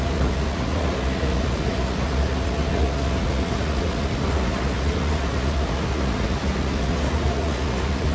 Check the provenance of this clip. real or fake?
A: fake